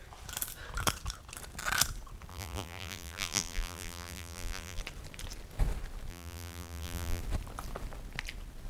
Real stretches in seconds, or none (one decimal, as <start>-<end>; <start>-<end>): 0.0-2.3; 4.8-6.1; 7.2-8.7

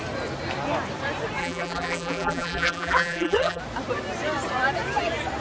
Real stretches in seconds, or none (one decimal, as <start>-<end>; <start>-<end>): 0.0-1.4; 3.6-5.4